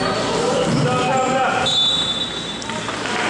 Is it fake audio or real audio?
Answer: real